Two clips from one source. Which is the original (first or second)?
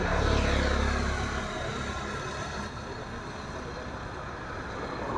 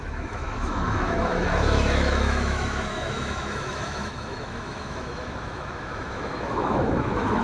first